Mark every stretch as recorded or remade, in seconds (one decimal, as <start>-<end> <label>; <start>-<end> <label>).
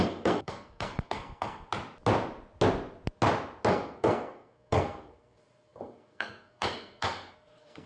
0.0-1.7 remade; 1.7-3.7 recorded; 3.7-7.9 remade